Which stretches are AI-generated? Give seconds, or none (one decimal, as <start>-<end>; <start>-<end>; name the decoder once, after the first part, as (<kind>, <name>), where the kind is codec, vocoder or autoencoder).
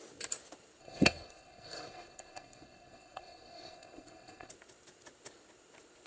0.8-4.5 (codec, SNAC)